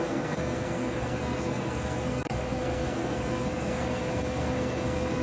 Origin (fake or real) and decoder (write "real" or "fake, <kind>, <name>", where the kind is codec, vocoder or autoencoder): fake, codec, SNAC